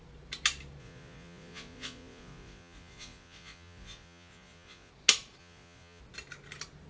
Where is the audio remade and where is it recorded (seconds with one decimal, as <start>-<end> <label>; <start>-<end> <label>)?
0.0-0.8 recorded; 0.8-4.9 remade; 4.9-5.4 recorded; 5.4-6.0 remade; 6.0-6.9 recorded